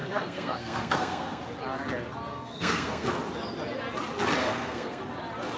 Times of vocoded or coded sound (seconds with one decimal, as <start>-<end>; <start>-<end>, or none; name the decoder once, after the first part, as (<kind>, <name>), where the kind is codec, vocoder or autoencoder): 0.0-1.4 (codec, SNAC); 2.3-3.2; 4.4-5.0